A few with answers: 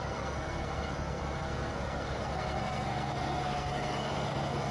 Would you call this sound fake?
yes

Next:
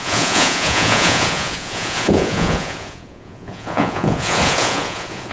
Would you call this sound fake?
yes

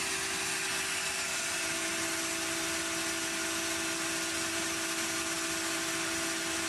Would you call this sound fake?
no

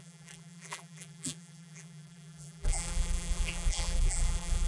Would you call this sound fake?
yes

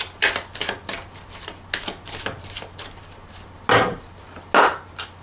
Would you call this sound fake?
no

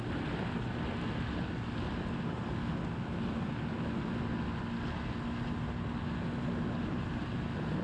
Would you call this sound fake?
no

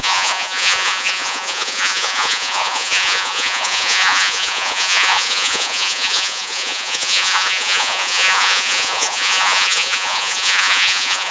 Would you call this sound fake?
yes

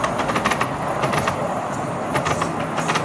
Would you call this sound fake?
no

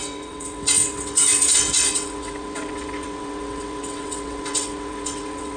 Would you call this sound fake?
yes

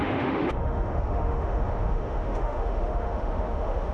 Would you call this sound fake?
yes